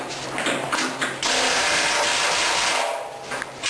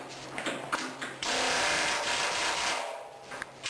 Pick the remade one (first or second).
second